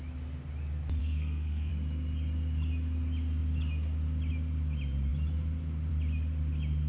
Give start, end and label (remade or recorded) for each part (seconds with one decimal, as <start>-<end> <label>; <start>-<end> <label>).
0.0-1.0 recorded; 1.0-1.7 remade; 1.7-6.9 recorded